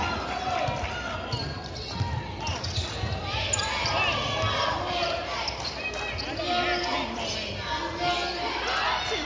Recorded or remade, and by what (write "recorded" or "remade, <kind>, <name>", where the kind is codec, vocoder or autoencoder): recorded